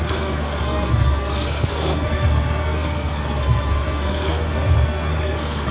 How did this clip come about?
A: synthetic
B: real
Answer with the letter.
A